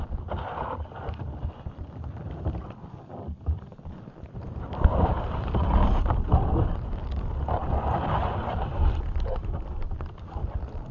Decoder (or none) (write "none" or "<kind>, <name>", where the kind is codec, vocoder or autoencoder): none